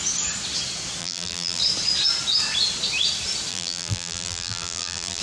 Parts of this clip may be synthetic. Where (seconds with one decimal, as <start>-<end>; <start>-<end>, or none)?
1.0-1.6; 3.5-5.2